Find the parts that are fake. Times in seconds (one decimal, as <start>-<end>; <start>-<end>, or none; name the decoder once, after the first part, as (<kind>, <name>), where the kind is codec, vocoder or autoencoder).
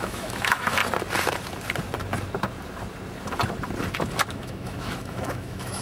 0.0-0.8 (autoencoder, DAC-VAE); 4.3-5.8